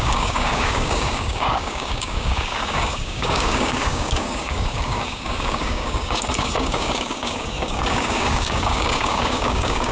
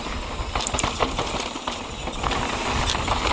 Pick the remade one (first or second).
first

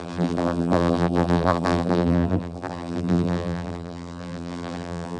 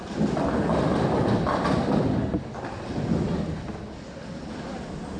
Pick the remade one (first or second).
first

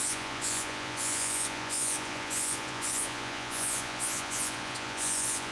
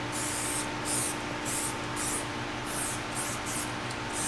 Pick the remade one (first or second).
first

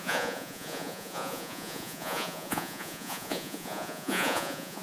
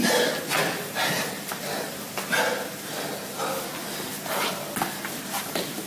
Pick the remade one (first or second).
first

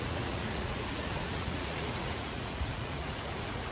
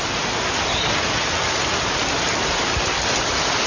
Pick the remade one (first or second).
first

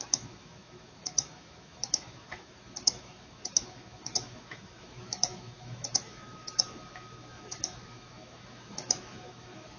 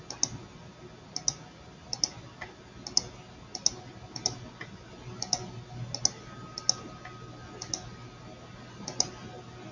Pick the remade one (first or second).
first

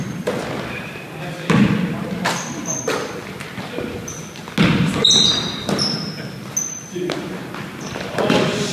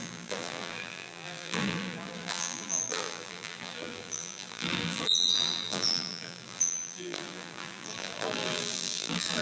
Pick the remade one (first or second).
second